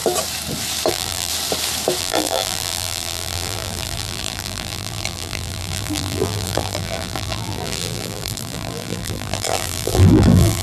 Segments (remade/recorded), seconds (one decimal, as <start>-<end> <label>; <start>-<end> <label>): 0.0-0.9 recorded; 0.9-1.3 remade; 1.3-2.0 recorded; 2.0-10.6 remade